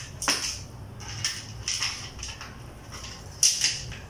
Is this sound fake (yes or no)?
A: no